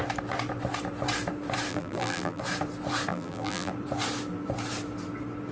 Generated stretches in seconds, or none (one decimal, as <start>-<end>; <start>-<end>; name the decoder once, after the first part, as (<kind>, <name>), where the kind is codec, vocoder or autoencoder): 1.7-2.4 (vocoder, BigVGAN v2); 3.1-3.7